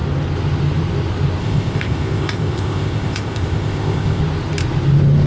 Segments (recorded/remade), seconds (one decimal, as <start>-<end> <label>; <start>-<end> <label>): 0.0-1.4 recorded; 1.4-4.2 remade; 4.2-5.3 recorded

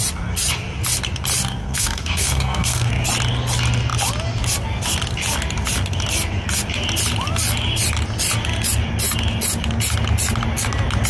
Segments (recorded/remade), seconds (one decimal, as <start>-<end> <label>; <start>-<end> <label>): 0.0-1.6 recorded; 1.6-2.9 remade; 2.9-11.1 recorded

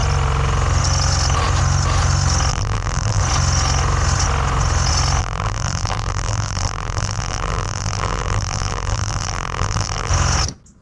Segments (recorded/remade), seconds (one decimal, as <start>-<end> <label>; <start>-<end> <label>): 0.0-2.5 recorded; 2.5-3.2 remade; 3.2-5.2 recorded; 5.2-10.1 remade; 10.1-10.8 recorded

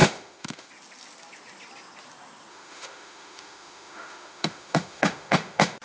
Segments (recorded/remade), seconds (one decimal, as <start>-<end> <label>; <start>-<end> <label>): 0.0-0.7 remade; 0.7-2.5 recorded; 2.5-5.8 remade

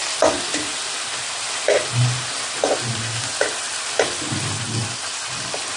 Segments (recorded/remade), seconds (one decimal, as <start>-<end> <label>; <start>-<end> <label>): 0.0-5.8 recorded

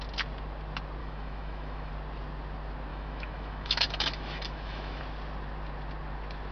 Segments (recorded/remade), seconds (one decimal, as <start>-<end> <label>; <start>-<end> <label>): 0.0-1.0 recorded; 1.0-1.9 remade; 1.9-2.9 recorded; 2.9-5.0 remade; 5.0-6.5 recorded

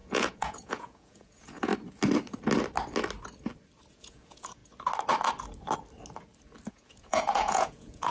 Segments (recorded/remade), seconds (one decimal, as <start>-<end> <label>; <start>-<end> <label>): 0.0-1.7 remade; 1.7-3.9 recorded; 3.9-4.6 remade; 4.6-6.7 recorded; 6.7-8.1 remade